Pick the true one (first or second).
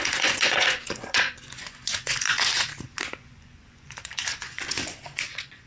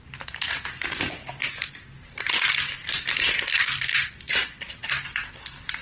second